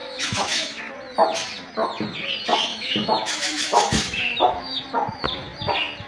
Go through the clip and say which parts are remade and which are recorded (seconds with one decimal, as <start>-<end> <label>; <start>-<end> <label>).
0.0-0.8 remade; 0.8-2.7 recorded; 2.7-4.8 remade; 4.8-6.1 recorded